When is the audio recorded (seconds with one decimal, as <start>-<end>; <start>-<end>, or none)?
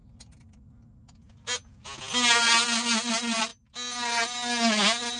0.0-5.2